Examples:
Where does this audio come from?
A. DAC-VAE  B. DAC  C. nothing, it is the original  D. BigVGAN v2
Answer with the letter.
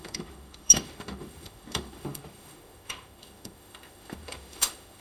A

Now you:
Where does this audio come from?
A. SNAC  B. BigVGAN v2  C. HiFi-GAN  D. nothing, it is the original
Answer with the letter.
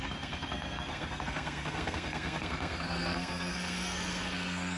A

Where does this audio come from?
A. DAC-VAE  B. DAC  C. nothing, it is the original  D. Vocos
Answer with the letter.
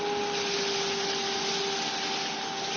C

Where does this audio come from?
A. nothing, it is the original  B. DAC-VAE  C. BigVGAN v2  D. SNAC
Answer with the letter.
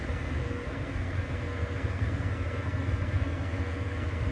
D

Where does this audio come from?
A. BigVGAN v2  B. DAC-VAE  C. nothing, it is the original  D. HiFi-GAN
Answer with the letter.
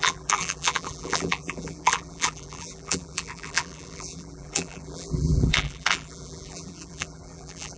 A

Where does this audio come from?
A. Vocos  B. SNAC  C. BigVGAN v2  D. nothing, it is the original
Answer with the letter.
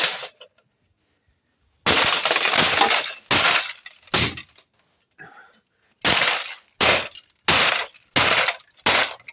D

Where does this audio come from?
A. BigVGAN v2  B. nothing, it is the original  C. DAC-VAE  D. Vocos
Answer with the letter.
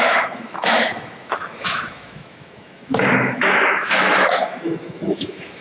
C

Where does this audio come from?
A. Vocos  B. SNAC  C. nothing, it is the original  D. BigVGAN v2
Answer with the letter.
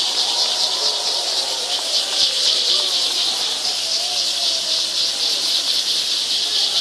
C